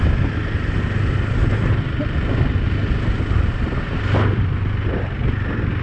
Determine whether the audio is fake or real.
real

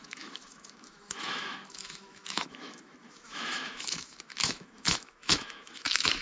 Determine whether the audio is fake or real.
fake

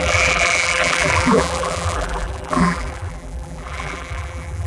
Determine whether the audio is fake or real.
fake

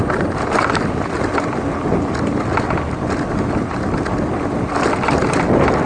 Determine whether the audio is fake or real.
real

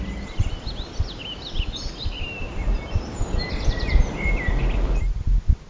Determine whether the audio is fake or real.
real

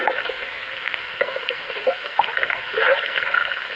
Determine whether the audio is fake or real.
fake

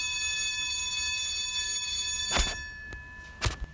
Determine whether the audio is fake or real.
real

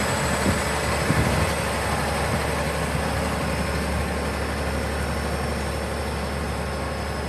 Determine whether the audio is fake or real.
real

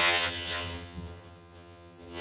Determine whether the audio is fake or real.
fake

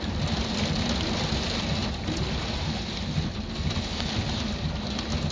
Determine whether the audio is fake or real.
real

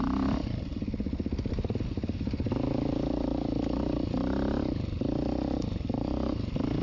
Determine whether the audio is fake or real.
real